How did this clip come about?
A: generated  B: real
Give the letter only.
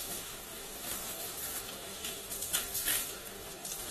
A